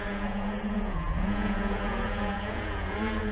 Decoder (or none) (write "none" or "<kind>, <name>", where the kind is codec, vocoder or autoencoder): vocoder, Vocos